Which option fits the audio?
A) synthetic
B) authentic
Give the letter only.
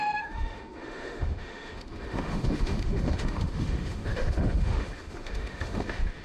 A